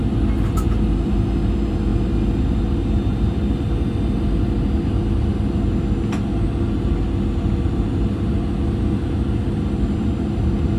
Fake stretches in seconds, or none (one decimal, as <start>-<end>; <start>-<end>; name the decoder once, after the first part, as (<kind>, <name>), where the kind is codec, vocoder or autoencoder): none